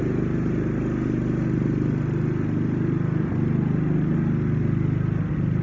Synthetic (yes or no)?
no